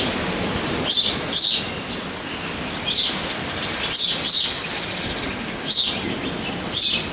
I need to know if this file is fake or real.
real